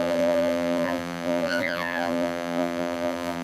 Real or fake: fake